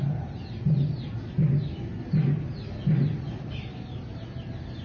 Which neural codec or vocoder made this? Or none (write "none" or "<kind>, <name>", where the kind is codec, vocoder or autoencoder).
none